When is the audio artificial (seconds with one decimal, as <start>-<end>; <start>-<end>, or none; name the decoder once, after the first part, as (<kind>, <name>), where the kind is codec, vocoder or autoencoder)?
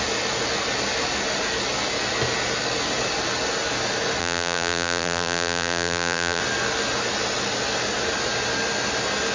4.2-6.4 (vocoder, BigVGAN v2)